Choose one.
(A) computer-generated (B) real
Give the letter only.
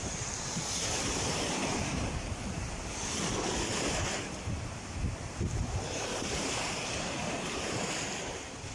A